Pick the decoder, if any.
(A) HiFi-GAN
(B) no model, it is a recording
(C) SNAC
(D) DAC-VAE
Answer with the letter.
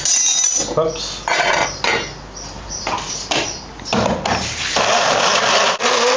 B